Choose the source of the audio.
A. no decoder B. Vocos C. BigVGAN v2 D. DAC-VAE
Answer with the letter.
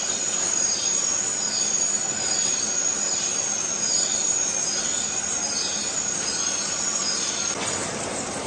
A